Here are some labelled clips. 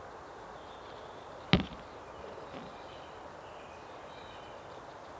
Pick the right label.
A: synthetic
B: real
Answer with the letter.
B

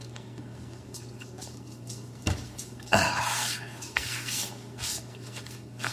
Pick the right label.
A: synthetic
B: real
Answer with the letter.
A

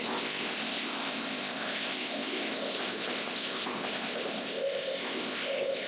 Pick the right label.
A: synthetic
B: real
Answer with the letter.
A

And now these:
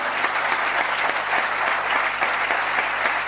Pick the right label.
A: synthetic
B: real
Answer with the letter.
B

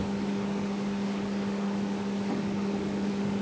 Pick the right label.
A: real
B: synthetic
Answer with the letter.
B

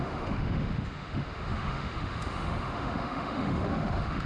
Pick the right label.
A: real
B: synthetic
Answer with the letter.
B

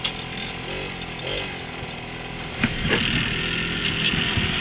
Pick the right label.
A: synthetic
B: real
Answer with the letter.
B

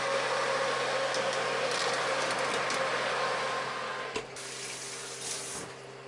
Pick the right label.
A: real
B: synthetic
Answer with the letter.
A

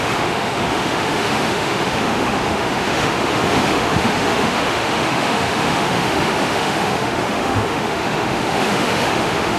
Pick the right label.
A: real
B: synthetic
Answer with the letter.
B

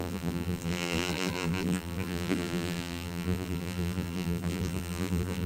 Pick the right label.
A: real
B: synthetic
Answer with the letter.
B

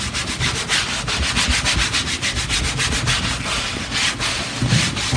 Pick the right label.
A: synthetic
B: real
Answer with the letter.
B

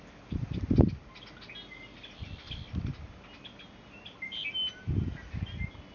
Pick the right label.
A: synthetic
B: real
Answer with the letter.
B